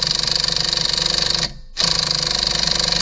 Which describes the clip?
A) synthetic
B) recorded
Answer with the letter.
B